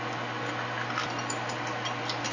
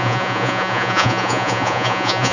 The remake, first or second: second